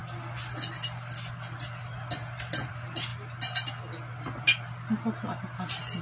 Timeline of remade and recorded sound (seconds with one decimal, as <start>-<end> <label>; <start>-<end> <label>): 0.0-6.0 recorded